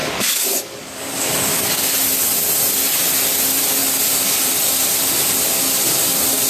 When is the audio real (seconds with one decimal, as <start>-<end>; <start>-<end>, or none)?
1.9-6.5